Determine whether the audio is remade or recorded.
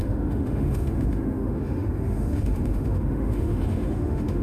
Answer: remade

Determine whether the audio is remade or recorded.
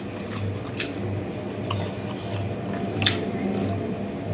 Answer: recorded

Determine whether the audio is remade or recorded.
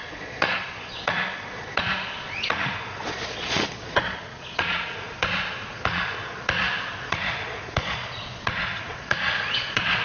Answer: remade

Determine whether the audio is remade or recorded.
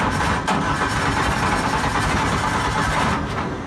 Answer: recorded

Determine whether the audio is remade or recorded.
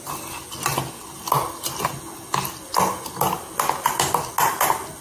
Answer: recorded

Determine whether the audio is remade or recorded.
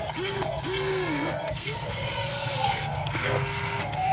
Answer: remade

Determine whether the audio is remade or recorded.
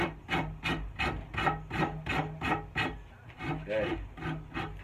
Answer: recorded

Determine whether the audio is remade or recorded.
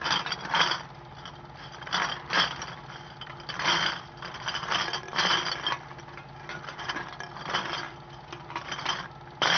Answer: recorded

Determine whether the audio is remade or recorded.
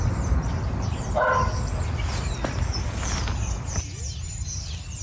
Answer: recorded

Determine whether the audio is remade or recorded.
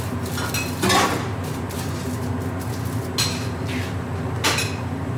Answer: recorded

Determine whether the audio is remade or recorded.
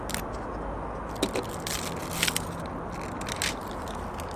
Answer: recorded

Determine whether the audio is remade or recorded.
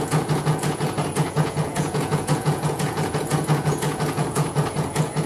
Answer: remade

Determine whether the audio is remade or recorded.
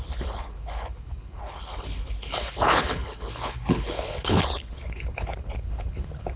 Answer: remade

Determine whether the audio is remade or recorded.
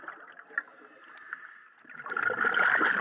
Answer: recorded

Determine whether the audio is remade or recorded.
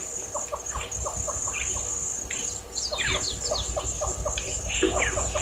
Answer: recorded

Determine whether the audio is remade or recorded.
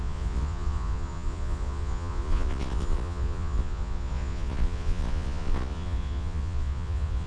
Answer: remade